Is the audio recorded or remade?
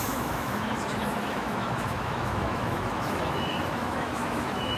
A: remade